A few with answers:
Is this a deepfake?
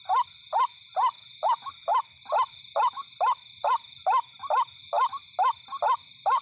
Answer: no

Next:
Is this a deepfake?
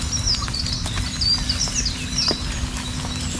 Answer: no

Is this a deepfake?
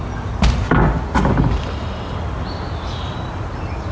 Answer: no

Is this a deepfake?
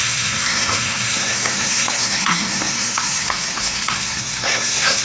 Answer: yes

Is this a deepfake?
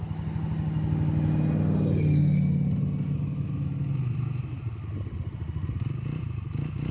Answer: no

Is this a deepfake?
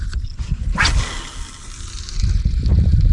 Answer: no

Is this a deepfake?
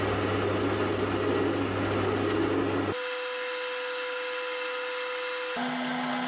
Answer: no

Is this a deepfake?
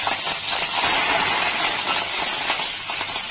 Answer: no